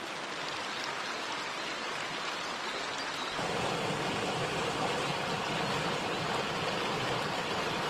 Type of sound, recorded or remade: recorded